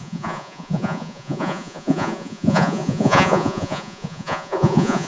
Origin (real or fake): fake